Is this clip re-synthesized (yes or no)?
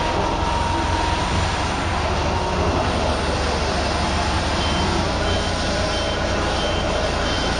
no